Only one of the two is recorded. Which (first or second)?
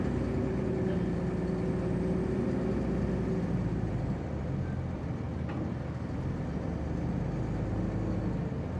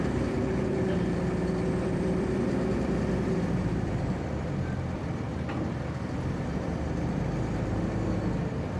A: first